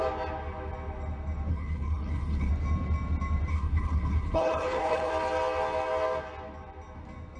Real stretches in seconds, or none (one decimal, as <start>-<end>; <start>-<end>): 0.0-1.5; 2.5-3.5; 5.1-7.4